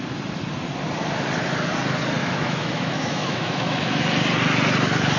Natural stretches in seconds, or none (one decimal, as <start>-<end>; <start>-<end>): 0.0-2.2; 4.0-5.2